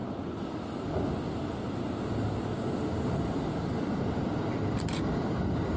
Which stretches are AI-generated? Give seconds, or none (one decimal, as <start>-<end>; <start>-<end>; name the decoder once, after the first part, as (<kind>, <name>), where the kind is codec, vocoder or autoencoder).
none